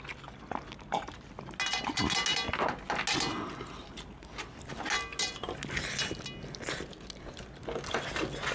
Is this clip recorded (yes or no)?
yes